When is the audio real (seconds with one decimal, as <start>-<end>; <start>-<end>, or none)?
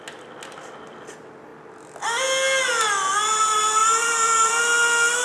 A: 0.0-3.8; 4.6-5.2